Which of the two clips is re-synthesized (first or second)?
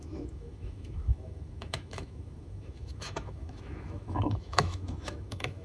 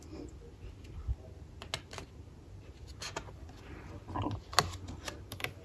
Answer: first